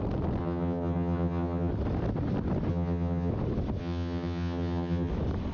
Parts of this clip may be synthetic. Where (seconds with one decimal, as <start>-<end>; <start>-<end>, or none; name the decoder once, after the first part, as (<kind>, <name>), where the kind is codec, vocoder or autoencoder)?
0.4-1.7 (vocoder, HiFi-GAN); 2.7-3.3; 3.8-5.1